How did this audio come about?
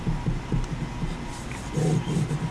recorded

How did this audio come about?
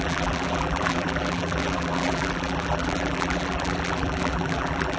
remade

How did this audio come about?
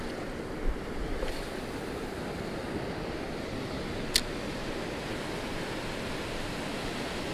recorded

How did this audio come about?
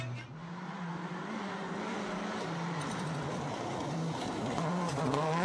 recorded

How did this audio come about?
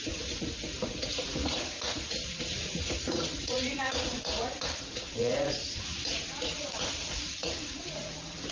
remade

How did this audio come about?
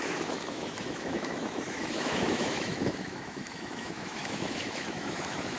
remade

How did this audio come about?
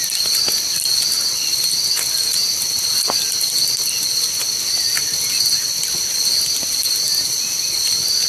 recorded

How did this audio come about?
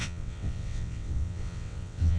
remade